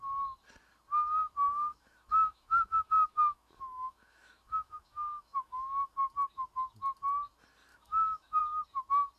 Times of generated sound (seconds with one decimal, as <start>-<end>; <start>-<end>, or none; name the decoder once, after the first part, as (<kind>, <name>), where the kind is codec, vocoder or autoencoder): 1.7-6.1 (autoencoder, DAC-VAE); 7.7-8.4